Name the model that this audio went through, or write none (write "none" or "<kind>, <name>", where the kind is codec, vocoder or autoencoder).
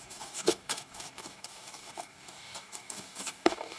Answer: codec, DAC